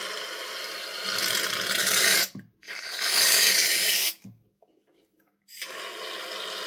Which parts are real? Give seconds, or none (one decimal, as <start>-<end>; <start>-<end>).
0.0-1.8; 5.8-6.7